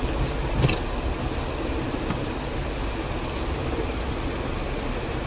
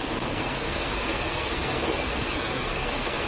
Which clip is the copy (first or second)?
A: second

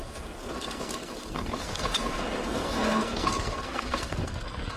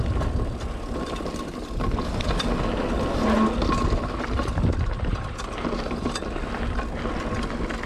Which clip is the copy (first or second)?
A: first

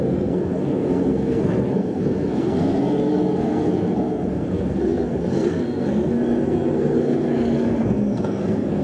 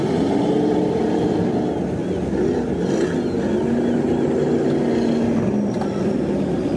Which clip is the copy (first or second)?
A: first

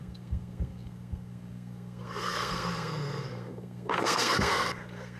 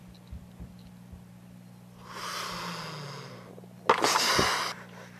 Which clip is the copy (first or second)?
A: first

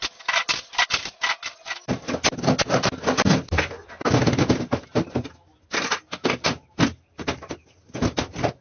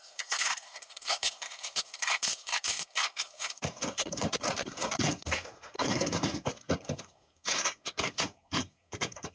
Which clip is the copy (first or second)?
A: second